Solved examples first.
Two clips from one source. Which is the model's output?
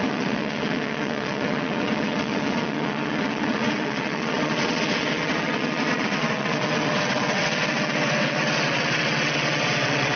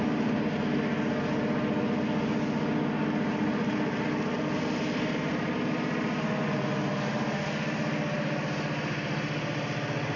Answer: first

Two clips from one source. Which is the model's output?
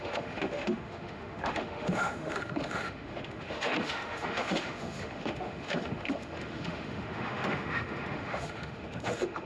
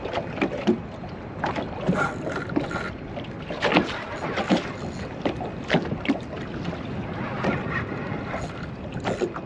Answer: first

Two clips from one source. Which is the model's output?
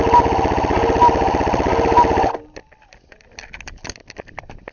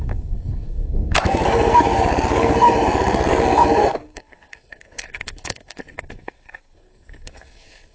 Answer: second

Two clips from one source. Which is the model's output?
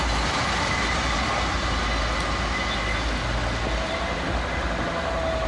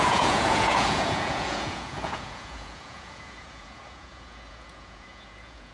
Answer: second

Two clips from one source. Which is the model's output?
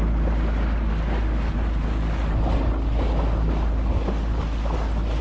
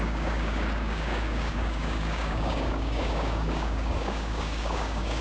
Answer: second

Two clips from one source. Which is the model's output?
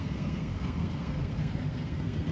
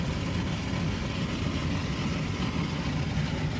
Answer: first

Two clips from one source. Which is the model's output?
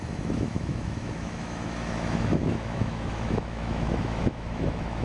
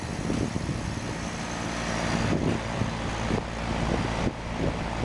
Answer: first